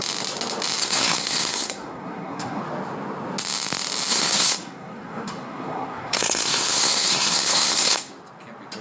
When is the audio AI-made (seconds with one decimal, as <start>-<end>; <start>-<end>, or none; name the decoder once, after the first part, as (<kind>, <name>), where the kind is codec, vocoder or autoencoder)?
0.8-2.6 (codec, SNAC); 4.1-8.1